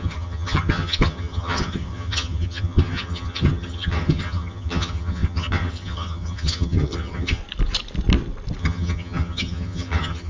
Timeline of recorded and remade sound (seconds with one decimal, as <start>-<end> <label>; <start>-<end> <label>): 0.0-7.4 remade; 7.4-8.6 recorded; 8.6-10.3 remade